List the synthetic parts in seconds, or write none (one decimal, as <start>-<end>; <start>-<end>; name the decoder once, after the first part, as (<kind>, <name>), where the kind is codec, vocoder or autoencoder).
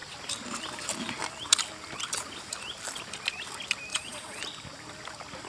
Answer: 3.9-4.4 (vocoder, Vocos)